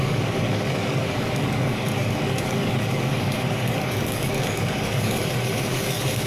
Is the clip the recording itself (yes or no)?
no